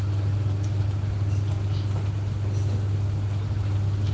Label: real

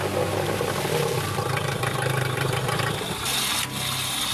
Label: real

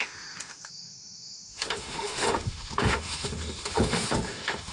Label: fake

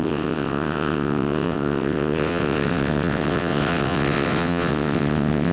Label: fake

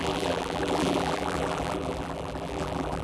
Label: fake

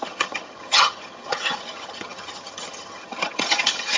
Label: fake